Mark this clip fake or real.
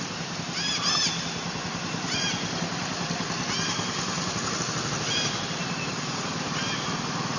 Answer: real